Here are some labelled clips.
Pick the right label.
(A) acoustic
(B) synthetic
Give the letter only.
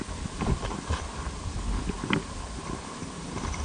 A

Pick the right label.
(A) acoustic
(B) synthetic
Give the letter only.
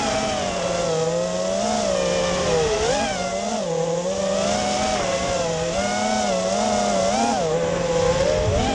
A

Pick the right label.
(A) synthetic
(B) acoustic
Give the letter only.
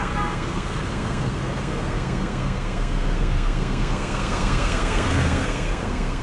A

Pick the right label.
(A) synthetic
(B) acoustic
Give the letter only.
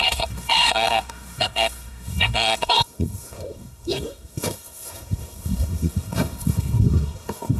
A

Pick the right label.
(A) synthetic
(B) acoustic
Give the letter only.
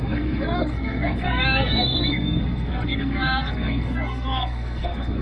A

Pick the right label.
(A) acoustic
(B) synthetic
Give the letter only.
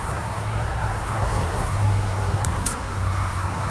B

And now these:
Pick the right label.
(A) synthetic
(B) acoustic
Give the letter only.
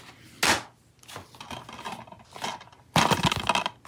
B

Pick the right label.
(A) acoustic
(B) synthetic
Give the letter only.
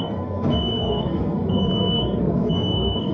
B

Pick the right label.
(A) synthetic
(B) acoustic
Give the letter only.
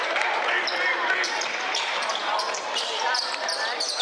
B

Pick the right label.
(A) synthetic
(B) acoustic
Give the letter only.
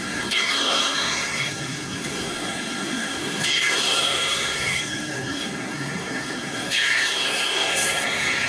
A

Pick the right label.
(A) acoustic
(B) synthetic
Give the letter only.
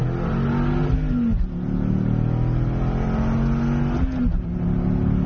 A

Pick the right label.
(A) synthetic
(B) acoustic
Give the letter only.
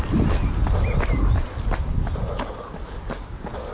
B